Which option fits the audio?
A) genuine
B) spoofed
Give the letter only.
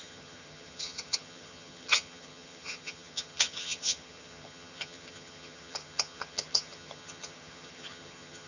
B